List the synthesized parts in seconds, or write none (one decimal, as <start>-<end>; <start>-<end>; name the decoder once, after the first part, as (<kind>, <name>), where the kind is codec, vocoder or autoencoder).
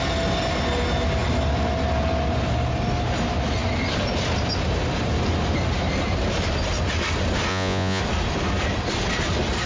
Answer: 7.5-8.0 (vocoder, Vocos)